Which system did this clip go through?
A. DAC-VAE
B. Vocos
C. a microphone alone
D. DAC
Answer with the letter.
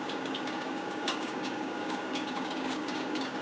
D